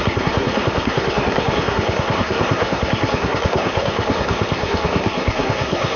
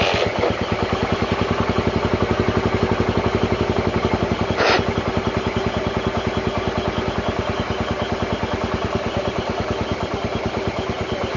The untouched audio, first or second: second